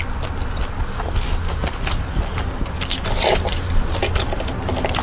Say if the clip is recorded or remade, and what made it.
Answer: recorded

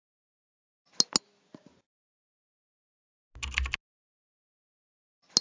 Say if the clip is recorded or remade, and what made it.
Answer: recorded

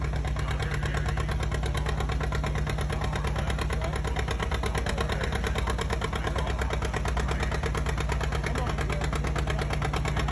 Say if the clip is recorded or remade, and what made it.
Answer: recorded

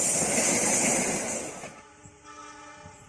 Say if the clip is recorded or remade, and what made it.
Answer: recorded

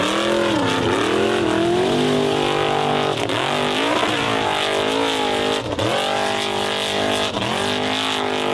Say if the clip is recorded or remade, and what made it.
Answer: recorded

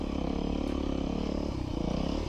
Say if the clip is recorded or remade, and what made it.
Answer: recorded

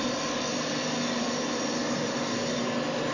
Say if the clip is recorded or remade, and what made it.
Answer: recorded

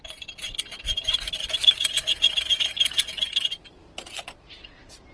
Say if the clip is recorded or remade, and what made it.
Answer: recorded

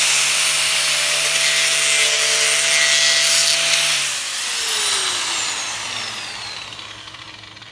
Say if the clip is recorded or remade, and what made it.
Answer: recorded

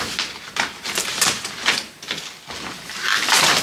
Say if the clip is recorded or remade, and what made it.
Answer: recorded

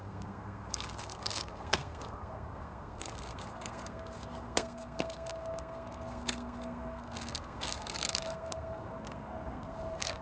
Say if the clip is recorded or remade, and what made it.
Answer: remade, codec, SNAC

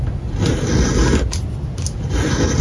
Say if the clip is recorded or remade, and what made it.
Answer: recorded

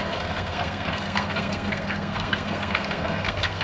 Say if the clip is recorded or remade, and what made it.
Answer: remade, codec, SNAC